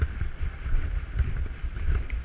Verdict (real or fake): real